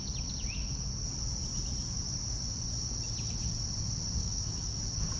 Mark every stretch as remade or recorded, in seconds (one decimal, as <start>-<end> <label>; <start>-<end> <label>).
0.0-4.2 recorded; 4.2-4.8 remade; 4.8-5.2 recorded

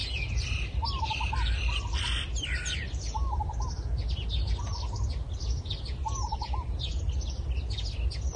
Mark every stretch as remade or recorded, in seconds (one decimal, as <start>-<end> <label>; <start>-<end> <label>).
0.0-8.4 recorded